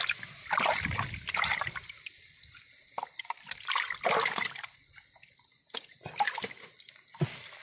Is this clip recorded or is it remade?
recorded